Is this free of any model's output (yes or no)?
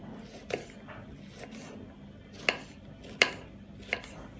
yes